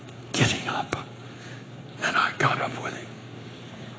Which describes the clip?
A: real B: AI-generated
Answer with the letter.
B